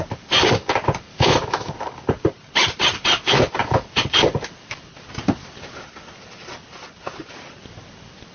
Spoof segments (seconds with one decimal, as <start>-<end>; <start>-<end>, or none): 1.1-1.7